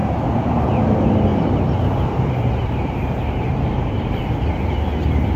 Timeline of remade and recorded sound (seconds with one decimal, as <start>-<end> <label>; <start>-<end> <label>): 0.0-0.6 remade; 0.6-1.3 recorded; 1.3-4.2 remade; 4.2-5.4 recorded